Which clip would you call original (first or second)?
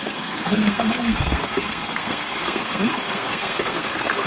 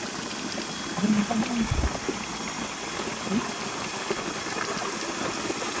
second